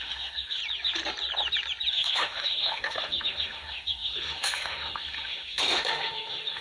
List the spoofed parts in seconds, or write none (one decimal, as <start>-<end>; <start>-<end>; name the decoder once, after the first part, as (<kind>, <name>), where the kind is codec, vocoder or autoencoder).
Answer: 0.0-0.6 (autoencoder, DAC-VAE); 1.9-6.6